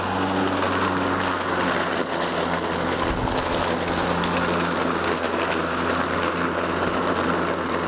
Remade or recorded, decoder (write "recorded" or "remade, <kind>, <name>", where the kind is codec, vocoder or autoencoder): recorded